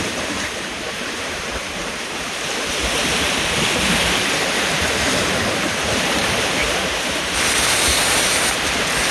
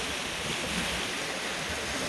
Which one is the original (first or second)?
second